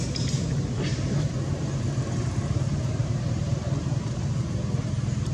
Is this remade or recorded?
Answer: remade